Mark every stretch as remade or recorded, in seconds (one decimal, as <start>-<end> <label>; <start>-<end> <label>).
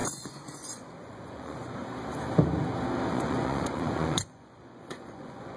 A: 0.0-1.8 remade; 1.8-3.1 recorded; 3.1-5.6 remade